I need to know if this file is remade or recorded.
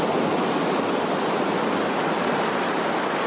recorded